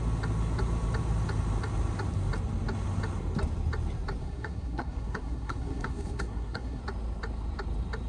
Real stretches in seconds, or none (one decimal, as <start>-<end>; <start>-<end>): 0.0-4.2; 6.8-8.1